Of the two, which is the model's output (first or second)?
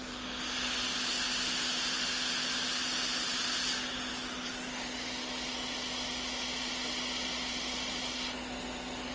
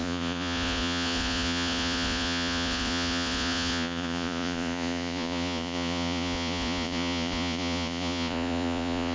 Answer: second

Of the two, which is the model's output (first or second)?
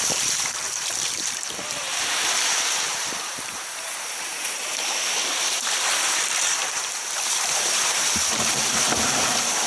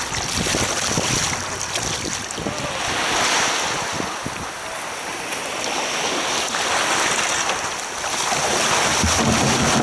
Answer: first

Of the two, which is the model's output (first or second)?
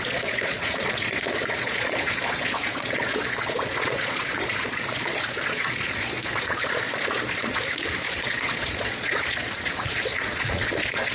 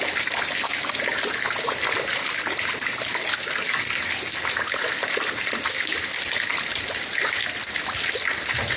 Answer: first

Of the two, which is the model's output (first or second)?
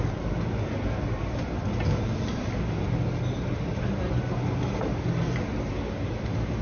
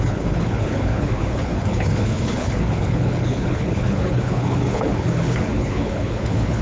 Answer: second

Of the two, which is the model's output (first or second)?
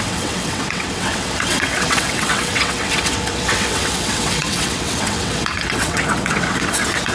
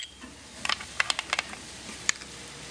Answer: first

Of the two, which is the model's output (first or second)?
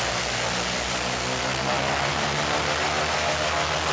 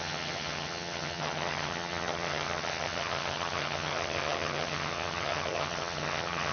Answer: second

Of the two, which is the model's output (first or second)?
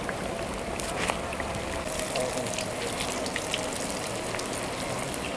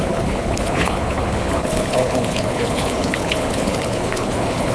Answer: second